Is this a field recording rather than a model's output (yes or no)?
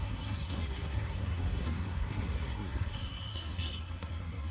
no